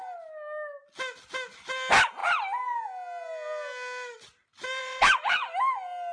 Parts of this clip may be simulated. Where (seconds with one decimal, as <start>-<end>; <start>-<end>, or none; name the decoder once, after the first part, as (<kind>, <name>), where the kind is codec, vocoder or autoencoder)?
4.8-5.5 (vocoder, WaveNeXt)